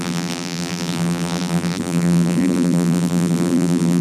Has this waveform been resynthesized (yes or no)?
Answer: yes